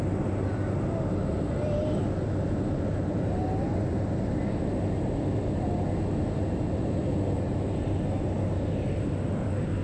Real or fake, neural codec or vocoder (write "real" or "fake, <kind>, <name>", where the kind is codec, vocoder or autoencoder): real